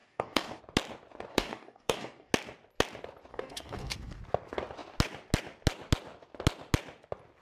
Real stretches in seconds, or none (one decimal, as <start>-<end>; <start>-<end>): 0.6-1.3; 2.3-3.3; 4.2-7.4